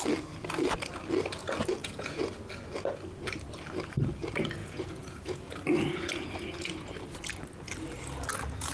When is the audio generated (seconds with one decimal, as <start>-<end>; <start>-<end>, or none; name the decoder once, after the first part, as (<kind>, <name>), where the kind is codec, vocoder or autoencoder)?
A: 1.8-2.4 (vocoder, Vocos); 4.6-5.5